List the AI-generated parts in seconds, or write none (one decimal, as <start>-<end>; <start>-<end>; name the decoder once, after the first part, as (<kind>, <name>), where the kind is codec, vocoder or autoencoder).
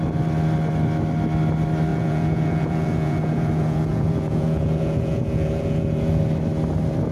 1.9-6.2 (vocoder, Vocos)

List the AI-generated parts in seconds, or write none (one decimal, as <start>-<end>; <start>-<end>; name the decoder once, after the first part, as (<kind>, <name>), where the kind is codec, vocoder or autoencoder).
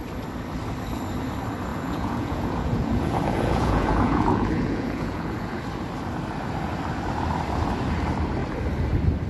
1.7-5.6 (vocoder, Vocos)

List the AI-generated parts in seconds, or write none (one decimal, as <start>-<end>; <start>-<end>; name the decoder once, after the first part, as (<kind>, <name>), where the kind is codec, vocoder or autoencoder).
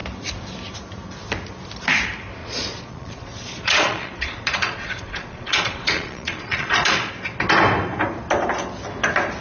2.4-7.1 (vocoder, Vocos)